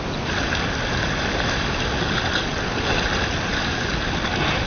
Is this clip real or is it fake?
real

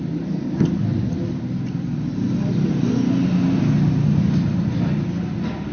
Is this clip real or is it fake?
real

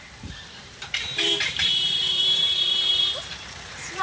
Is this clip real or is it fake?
fake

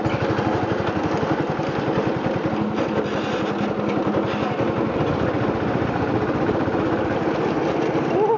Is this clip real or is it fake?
real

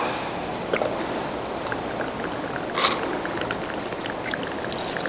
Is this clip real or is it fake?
real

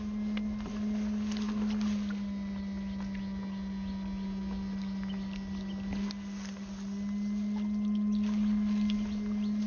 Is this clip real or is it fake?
real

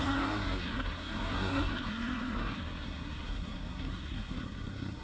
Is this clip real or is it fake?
fake